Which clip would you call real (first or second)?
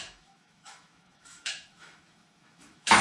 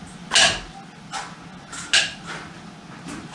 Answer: second